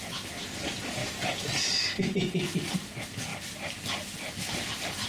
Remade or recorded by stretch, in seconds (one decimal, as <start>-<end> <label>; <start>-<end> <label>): 0.0-5.1 recorded

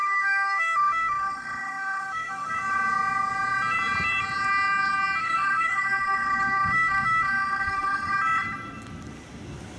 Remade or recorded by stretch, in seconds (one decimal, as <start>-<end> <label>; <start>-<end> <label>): 0.0-2.5 remade; 2.5-5.2 recorded; 5.2-8.1 remade; 8.1-9.8 recorded